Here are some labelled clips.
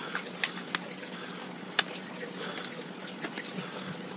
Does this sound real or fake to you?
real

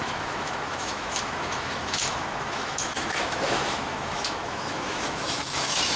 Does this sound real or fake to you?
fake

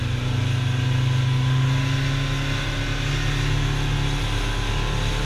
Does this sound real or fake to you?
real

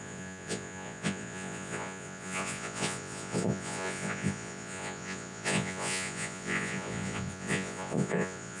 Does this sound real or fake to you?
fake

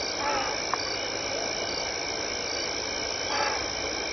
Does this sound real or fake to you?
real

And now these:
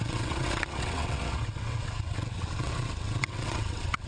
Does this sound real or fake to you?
fake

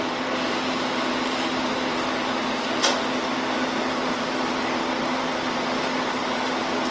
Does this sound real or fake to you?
real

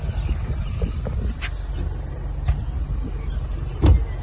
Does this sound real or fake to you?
real